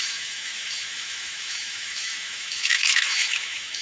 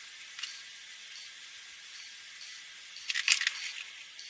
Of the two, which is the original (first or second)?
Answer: second